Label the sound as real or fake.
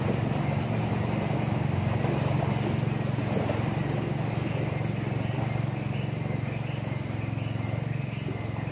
real